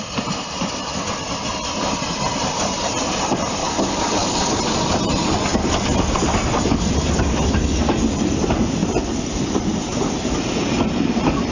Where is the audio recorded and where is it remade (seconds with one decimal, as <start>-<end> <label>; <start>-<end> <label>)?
0.0-3.6 recorded; 3.6-4.6 remade; 4.6-11.5 recorded